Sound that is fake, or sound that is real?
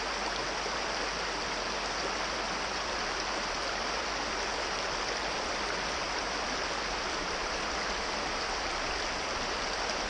real